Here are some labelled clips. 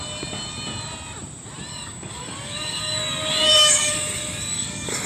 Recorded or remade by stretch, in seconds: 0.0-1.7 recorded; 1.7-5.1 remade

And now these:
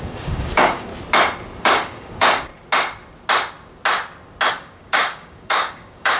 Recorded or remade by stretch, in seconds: 0.0-0.9 remade; 0.9-1.6 recorded; 1.6-2.5 remade; 2.5-4.5 recorded; 4.5-6.2 remade

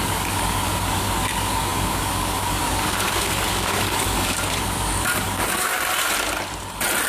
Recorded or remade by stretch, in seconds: 0.0-5.7 remade; 5.7-7.1 recorded

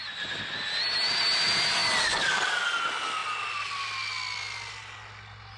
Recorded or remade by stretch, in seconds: 0.0-5.6 recorded

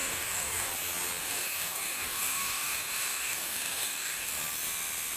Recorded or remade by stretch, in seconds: 0.0-0.7 remade; 0.7-1.2 recorded; 1.2-4.3 remade; 4.3-5.2 recorded